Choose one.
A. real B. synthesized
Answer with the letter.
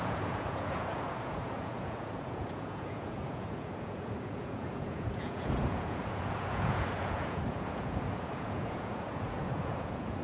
B